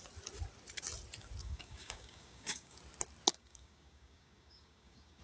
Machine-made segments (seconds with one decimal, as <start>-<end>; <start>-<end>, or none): 1.4-2.8; 3.3-5.2